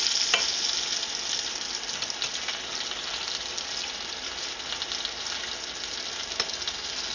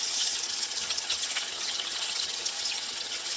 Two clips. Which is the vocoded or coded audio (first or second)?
second